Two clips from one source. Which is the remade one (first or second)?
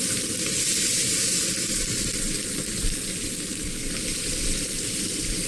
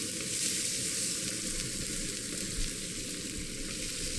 first